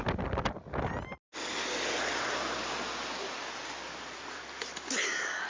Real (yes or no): yes